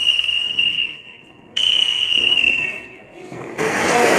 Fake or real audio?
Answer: fake